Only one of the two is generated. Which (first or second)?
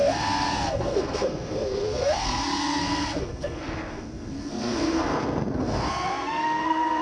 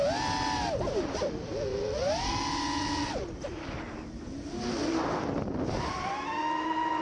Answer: first